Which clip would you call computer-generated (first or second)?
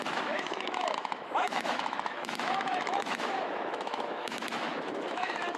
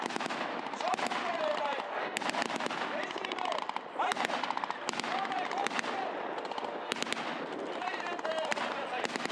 first